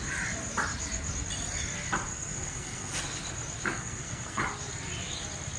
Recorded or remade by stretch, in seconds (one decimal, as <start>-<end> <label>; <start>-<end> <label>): 0.0-2.1 recorded; 2.1-3.0 remade; 3.0-3.7 recorded; 3.7-4.4 remade; 4.4-5.6 recorded